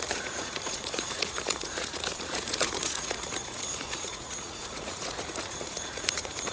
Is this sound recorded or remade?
remade